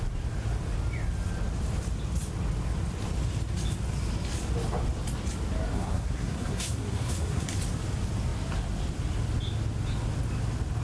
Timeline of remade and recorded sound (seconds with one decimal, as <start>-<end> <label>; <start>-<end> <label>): 0.0-5.7 recorded; 5.7-7.5 remade; 7.5-10.8 recorded

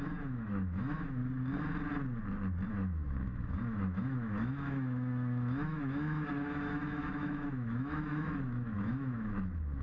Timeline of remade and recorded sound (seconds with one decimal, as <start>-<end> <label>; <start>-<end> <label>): 0.0-1.2 remade; 1.2-2.7 recorded; 2.7-9.8 remade